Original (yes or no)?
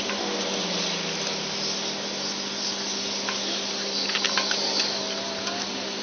yes